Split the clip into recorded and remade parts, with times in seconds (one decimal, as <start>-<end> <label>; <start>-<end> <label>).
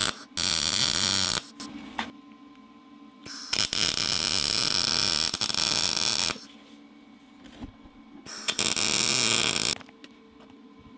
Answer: 0.0-11.0 recorded